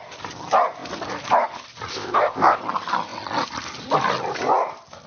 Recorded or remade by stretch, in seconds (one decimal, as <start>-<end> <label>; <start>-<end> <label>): 0.0-1.9 recorded; 1.9-2.6 remade; 2.6-5.1 recorded